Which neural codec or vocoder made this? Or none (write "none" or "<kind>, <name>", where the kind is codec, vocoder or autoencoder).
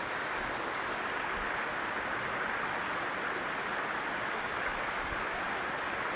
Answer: none